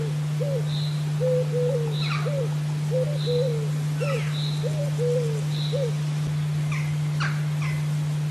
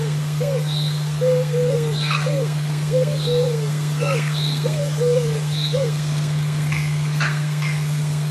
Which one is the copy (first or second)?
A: second